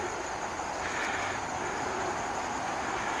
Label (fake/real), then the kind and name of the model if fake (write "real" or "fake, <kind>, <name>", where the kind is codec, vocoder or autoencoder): real